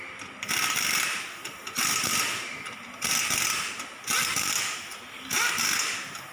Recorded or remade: recorded